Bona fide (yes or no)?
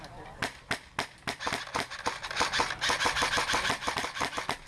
yes